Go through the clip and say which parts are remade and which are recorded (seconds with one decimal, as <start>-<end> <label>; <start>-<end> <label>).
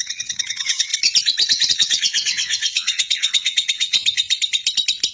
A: 0.0-0.9 remade; 0.9-1.7 recorded; 1.7-4.0 remade; 4.0-5.1 recorded